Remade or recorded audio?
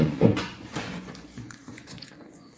remade